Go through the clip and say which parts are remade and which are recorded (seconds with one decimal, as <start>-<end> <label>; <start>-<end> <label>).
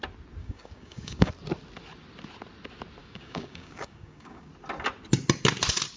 0.0-0.4 recorded; 0.4-1.3 remade; 1.3-3.0 recorded; 3.0-4.5 remade; 4.5-6.0 recorded